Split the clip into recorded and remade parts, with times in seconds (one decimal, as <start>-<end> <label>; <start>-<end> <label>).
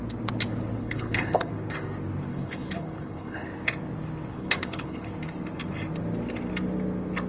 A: 0.0-0.8 recorded; 0.8-1.5 remade; 1.5-2.3 recorded; 2.3-3.5 remade; 3.5-4.3 recorded; 4.3-5.1 remade; 5.1-7.3 recorded